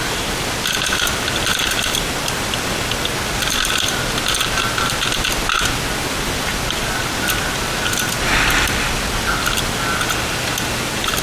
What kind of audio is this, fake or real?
real